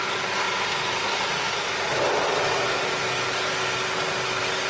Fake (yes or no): no